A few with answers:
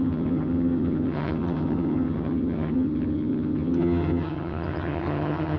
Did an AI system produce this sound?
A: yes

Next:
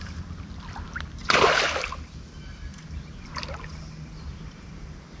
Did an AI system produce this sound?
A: no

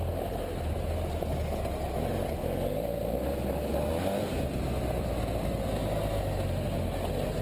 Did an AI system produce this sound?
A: no